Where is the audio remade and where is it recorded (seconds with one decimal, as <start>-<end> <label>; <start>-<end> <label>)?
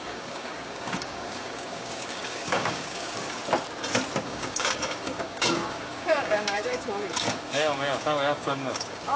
0.0-3.4 remade; 3.4-4.2 recorded; 4.2-9.2 remade